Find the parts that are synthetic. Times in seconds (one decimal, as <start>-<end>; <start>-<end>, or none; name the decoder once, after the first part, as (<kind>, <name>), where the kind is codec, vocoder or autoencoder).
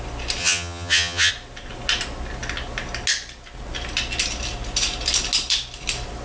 0.4-1.3 (vocoder, HiFi-GAN)